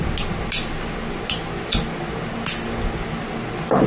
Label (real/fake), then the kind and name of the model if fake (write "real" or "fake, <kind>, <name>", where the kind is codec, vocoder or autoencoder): real